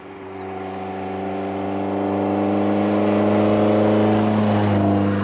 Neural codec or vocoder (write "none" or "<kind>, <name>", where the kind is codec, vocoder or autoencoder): none